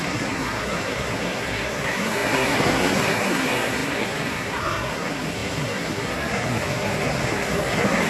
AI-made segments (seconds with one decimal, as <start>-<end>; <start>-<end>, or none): 0.0-8.1